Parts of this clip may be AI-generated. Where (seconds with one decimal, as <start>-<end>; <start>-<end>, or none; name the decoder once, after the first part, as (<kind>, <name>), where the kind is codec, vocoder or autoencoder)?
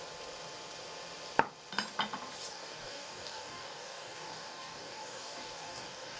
2.5-6.2 (codec, DAC)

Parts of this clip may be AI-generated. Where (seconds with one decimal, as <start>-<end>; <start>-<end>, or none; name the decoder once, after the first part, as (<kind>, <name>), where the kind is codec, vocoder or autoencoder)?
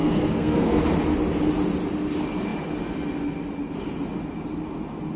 0.0-0.8 (codec, SNAC)